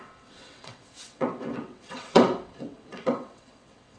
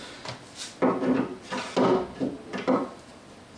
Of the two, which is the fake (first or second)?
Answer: first